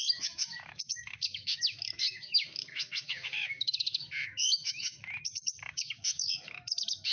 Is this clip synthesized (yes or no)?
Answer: yes